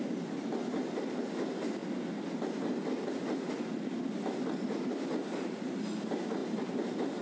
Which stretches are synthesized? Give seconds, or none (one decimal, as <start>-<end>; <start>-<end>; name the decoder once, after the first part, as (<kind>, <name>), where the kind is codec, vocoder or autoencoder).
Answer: none